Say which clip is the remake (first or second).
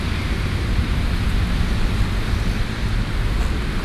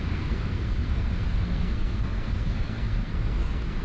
second